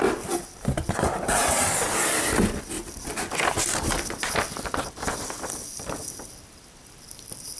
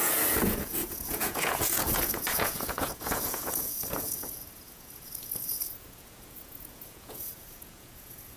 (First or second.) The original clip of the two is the first